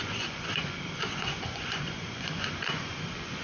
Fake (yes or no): yes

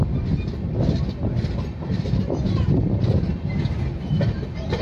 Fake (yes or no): no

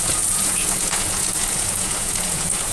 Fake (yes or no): yes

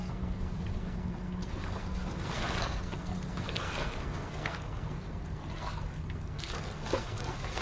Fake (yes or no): yes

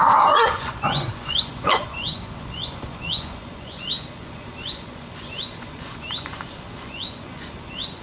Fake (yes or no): yes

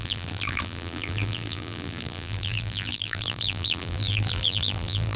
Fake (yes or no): yes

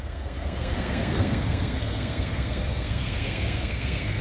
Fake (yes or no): yes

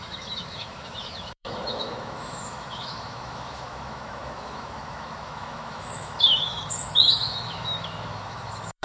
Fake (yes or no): yes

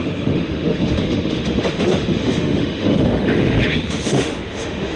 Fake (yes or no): yes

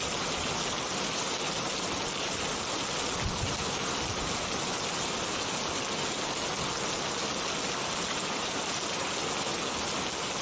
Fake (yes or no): no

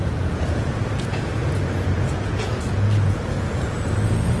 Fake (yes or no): yes